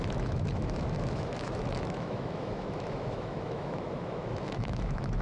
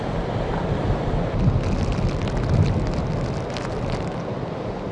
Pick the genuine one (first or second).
second